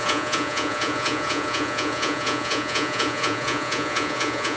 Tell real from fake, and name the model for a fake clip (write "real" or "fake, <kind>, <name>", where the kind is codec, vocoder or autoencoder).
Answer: fake, vocoder, Vocos